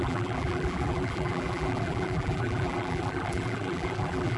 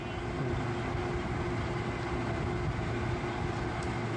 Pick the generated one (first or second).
first